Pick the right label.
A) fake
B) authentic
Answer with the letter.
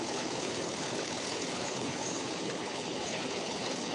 A